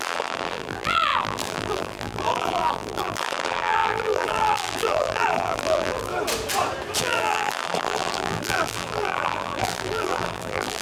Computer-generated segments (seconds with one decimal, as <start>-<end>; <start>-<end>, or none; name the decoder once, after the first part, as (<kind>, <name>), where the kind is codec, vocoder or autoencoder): 0.0-6.1 (vocoder, BigVGAN v2); 7.0-10.8